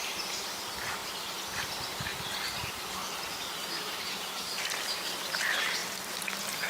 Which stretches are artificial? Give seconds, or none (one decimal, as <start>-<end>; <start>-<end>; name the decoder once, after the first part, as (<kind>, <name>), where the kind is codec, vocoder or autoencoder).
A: 2.1-3.5 (vocoder, BigVGAN v2)